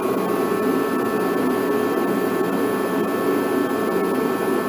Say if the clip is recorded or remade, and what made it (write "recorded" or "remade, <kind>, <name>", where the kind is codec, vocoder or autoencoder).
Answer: recorded